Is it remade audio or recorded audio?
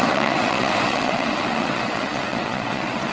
remade